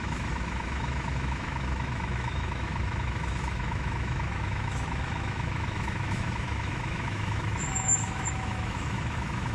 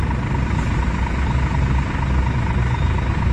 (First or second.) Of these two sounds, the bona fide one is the second